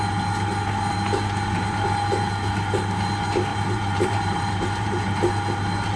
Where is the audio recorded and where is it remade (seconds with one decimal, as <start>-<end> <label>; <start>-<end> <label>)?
0.0-3.5 recorded; 3.5-5.3 remade; 5.3-6.0 recorded